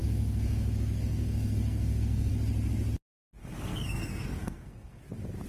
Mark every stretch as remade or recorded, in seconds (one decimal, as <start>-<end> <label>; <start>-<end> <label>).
0.0-2.3 remade; 2.3-3.4 recorded; 3.4-5.0 remade; 5.0-5.5 recorded